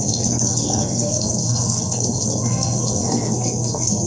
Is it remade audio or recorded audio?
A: remade